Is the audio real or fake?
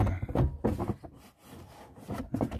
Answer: real